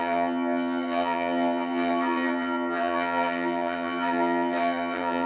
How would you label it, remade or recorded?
remade